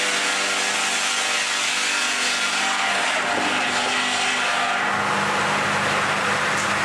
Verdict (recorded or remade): recorded